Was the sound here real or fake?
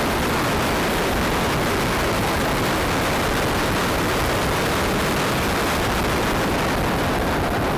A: real